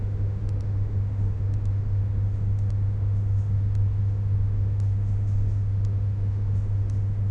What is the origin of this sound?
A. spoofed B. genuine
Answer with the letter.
A